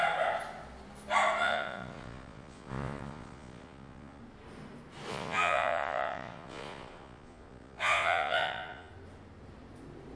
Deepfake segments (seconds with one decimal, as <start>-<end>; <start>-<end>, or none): 1.4-4.2; 5.1-8.9